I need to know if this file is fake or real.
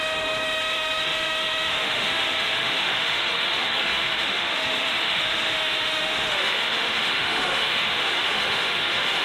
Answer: fake